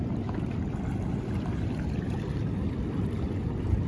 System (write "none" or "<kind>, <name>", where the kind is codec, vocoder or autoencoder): none